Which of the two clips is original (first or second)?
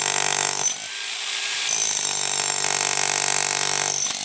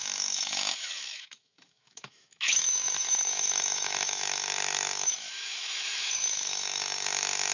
first